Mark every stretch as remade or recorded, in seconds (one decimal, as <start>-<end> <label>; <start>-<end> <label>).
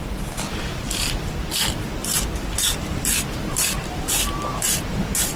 0.0-2.0 recorded; 2.0-4.7 remade; 4.7-5.4 recorded